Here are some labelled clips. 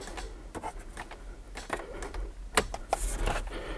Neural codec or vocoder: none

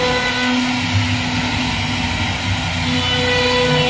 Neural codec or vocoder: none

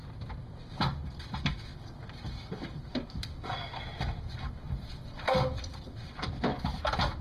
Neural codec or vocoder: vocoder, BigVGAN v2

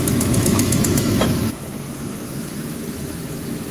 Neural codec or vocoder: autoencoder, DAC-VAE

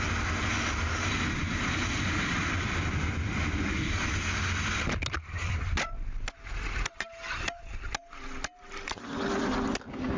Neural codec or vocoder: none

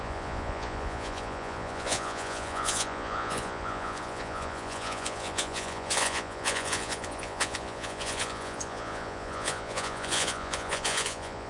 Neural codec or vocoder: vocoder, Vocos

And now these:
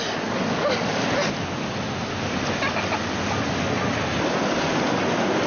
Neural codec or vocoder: none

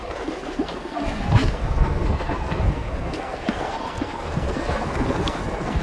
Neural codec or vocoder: codec, SNAC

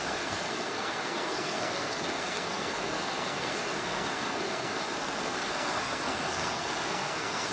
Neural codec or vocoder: codec, SNAC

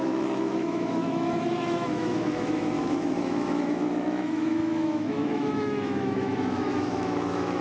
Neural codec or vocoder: autoencoder, DAC-VAE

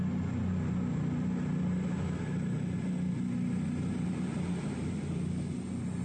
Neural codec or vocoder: none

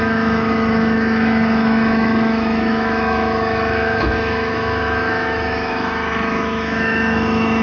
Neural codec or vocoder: autoencoder, DAC-VAE